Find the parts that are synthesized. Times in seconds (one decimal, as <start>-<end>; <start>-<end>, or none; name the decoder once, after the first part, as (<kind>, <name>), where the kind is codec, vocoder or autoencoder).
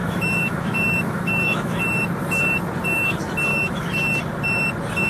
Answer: 0.0-1.8 (autoencoder, DAC-VAE); 3.5-4.2